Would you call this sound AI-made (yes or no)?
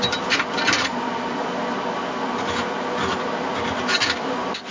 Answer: no